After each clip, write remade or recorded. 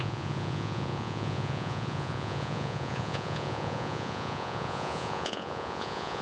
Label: remade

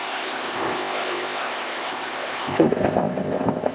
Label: remade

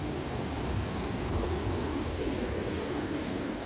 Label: remade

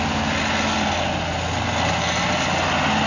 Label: recorded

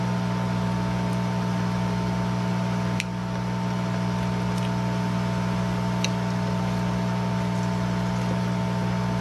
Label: recorded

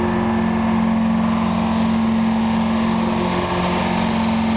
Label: recorded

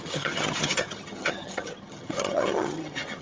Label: remade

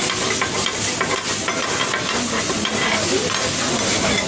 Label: recorded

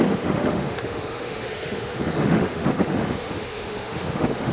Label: remade